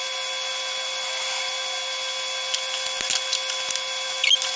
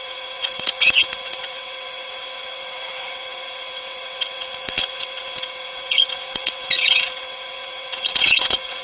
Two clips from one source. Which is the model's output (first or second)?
second